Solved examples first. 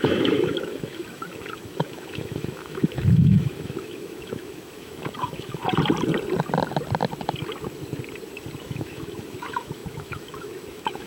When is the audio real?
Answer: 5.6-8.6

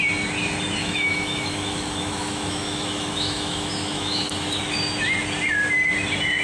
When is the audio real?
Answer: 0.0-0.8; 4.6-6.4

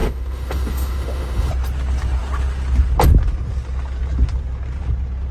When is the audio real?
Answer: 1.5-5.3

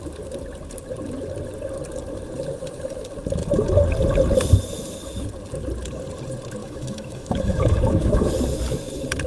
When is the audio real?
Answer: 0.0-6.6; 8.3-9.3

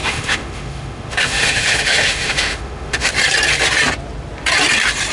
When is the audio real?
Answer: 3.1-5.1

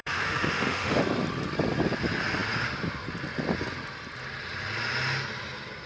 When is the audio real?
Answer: 1.0-5.9

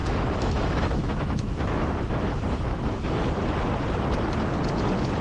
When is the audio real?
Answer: 3.1-5.2

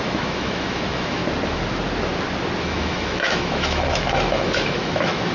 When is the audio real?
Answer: 1.2-2.6